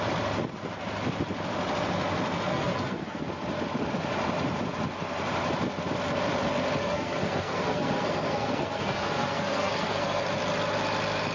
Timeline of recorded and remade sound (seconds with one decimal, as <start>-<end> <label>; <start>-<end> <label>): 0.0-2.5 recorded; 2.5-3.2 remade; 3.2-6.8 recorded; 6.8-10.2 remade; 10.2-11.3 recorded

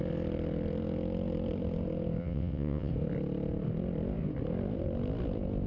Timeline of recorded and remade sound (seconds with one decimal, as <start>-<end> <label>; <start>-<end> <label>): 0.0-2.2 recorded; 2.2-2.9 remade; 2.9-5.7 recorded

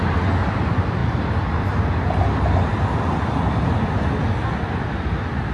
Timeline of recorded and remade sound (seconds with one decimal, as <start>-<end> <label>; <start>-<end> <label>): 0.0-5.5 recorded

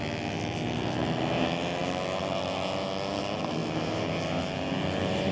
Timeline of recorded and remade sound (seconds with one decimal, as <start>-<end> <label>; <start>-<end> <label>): 0.0-5.3 recorded

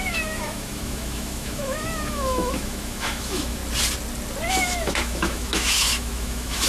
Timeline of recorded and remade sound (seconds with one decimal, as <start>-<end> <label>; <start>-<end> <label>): 0.0-3.6 remade; 3.6-4.5 recorded; 4.5-6.7 remade

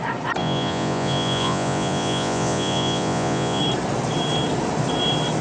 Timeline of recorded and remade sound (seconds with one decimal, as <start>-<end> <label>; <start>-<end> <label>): 0.0-0.4 recorded; 0.4-3.6 remade; 3.6-5.4 recorded

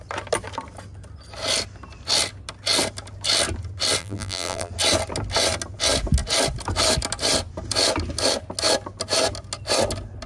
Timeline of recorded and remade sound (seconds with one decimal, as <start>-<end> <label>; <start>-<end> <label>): 0.0-4.0 recorded; 4.0-4.7 remade; 4.7-10.3 recorded

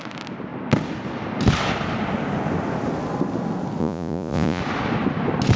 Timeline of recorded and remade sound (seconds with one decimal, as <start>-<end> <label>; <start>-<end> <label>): 0.0-3.8 recorded; 3.8-4.6 remade; 4.6-5.6 recorded